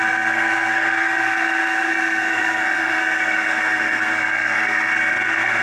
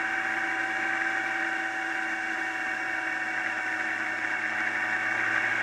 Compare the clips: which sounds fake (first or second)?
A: first